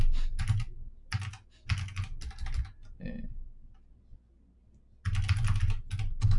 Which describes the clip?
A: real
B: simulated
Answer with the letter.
A